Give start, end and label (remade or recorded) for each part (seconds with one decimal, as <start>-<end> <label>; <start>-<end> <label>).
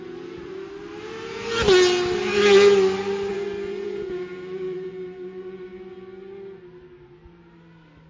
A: 0.0-3.3 recorded; 3.3-5.6 remade; 5.6-8.1 recorded